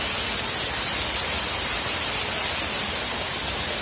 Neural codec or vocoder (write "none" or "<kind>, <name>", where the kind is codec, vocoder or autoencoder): none